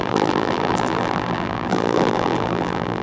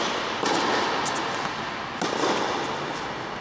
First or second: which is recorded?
second